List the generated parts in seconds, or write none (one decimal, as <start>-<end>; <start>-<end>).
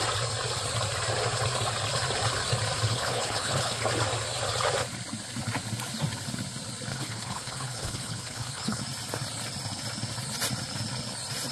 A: 2.9-3.8; 6.9-8.8